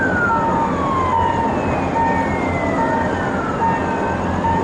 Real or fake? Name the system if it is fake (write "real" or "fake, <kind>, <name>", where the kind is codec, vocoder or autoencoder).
real